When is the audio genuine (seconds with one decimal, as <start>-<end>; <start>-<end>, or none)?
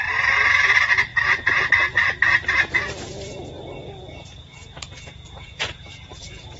0.0-1.1; 1.7-3.8